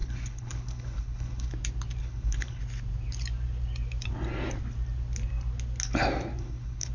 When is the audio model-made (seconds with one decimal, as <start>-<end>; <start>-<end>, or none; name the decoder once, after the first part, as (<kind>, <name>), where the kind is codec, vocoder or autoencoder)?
0.0-1.5 (codec, HILCodec); 2.0-2.6; 6.4-6.9